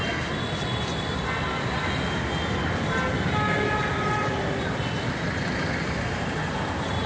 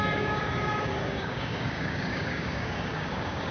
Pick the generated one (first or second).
second